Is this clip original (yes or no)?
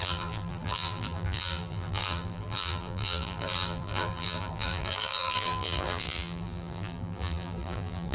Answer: no